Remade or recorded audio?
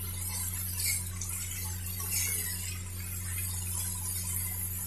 recorded